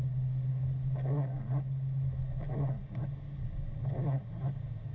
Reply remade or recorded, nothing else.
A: recorded